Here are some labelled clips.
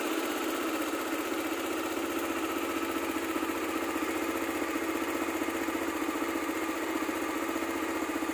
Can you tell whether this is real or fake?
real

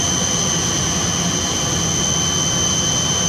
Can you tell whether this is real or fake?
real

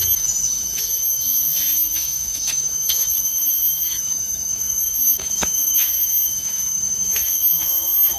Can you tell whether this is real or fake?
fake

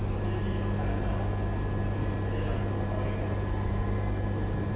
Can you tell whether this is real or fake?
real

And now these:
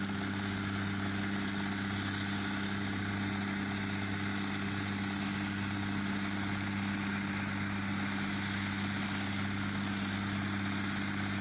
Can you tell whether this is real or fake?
real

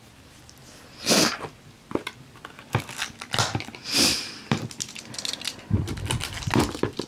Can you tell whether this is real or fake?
real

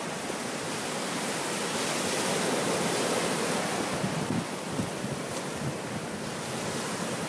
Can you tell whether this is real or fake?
real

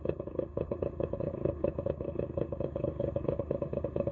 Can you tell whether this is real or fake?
fake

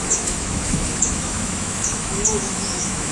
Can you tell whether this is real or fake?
fake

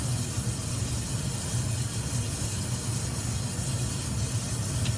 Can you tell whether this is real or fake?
real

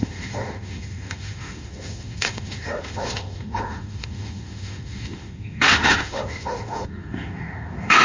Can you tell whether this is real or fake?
fake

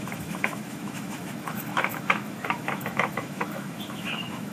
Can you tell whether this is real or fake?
fake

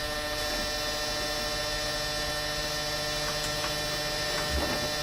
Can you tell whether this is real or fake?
real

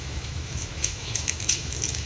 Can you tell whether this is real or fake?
fake